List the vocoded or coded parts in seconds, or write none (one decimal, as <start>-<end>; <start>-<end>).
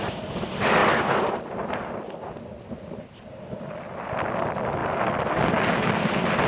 0.8-4.3; 4.8-5.7